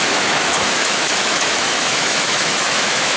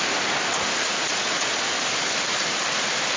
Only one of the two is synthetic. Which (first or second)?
first